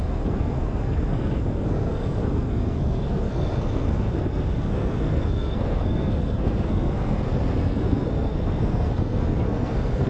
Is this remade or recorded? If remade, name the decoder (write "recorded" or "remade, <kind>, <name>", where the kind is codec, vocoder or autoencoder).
remade, codec, SNAC